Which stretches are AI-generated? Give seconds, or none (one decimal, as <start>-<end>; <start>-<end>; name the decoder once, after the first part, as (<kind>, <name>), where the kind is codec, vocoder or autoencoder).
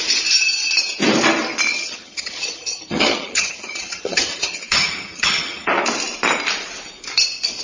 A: 1.7-5.7 (vocoder, HiFi-GAN)